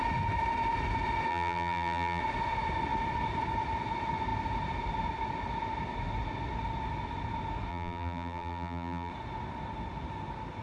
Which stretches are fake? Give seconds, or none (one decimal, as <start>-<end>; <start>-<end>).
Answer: 1.3-2.2; 7.7-9.1